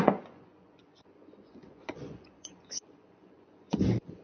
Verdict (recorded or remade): remade